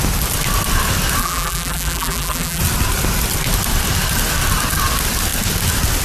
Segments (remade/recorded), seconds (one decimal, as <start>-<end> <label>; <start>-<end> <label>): 0.0-1.2 recorded; 1.2-2.6 remade; 2.6-6.0 recorded